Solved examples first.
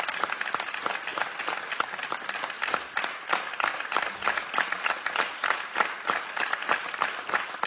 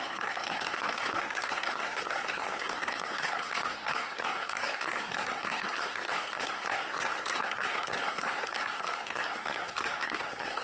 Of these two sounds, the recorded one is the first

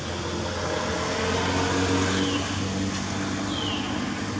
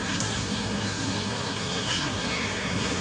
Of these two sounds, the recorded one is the first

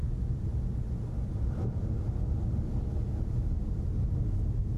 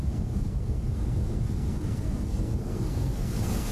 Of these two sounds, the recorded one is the first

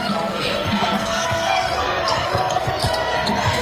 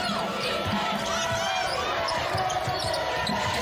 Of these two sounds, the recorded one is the second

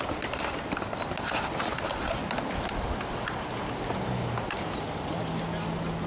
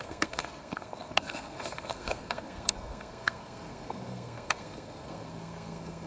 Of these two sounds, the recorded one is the first